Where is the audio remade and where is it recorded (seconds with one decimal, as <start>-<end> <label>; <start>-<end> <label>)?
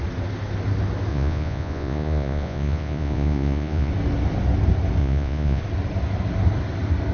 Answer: 0.0-1.1 recorded; 1.1-3.9 remade; 3.9-5.0 recorded; 5.0-5.6 remade; 5.6-7.1 recorded